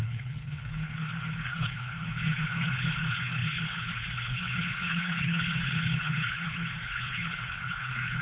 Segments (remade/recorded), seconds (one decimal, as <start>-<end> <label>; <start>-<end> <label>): 0.0-8.2 remade